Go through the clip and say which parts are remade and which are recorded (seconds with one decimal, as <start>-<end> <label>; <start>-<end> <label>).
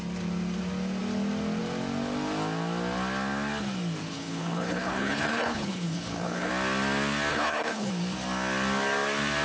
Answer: 0.0-4.1 recorded; 4.1-6.5 remade; 6.5-7.3 recorded; 7.3-7.9 remade; 7.9-9.4 recorded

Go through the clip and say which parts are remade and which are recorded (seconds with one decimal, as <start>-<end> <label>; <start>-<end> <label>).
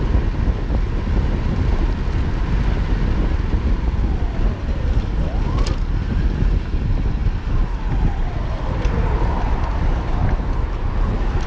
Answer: 0.0-11.5 recorded